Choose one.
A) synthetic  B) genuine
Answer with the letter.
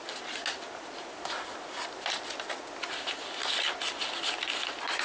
B